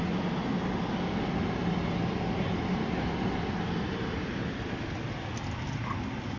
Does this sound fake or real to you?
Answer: real